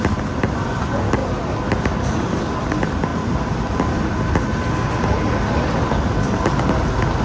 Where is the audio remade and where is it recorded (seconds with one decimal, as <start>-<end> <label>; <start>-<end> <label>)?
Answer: 0.0-7.2 recorded